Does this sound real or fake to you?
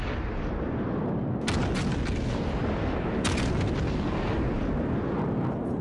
real